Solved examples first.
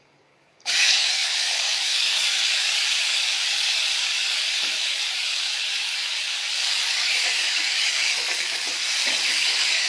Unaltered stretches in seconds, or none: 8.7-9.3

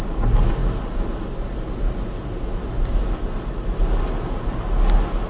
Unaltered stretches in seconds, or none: 0.0-5.3

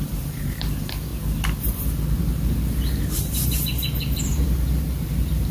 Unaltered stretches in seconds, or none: 1.1-4.2

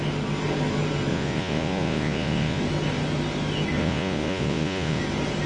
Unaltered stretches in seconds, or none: 0.0-1.1; 2.6-3.8; 5.0-5.5

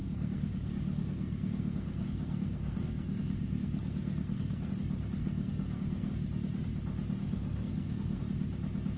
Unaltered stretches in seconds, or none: 4.7-5.2; 6.1-7.2; 8.2-9.0